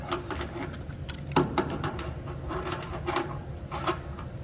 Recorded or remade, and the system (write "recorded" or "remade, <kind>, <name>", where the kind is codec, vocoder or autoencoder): remade, vocoder, BigVGAN v2